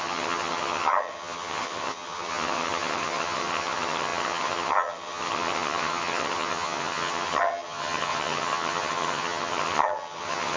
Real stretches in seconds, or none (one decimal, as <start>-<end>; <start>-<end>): none